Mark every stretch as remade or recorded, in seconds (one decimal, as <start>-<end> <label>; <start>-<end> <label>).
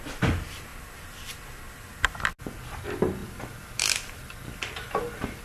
0.0-0.7 recorded; 0.7-2.4 remade; 2.4-3.2 recorded; 3.2-5.4 remade